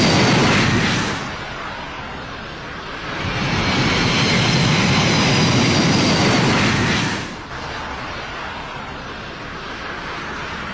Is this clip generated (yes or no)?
no